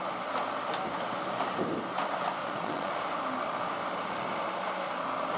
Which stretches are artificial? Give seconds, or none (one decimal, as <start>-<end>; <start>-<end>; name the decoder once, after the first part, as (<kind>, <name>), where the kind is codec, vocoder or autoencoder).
2.4-3.0 (vocoder, Vocos)